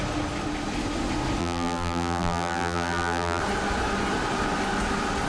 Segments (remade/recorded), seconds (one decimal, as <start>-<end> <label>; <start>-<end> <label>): 0.0-1.4 recorded; 1.4-3.4 remade; 3.4-5.3 recorded